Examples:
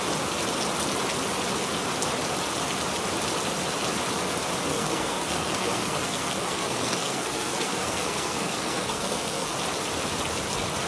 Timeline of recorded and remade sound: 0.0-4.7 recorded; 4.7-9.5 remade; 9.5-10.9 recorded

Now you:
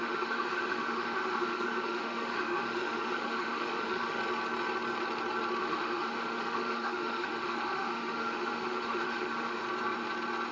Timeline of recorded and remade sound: 0.0-4.2 remade; 4.2-5.6 recorded; 5.6-9.6 remade; 9.6-10.5 recorded

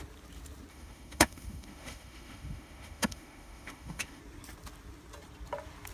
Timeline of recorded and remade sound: 0.0-0.7 recorded; 0.7-4.2 remade; 4.2-5.9 recorded